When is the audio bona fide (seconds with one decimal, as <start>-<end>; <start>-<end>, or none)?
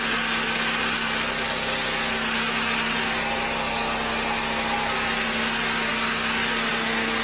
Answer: 0.0-7.2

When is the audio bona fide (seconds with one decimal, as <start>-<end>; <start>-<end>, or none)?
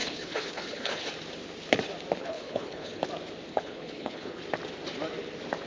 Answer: 1.1-2.2; 3.0-3.5; 4.4-5.7